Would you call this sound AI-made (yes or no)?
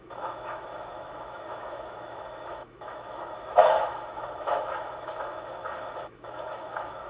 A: yes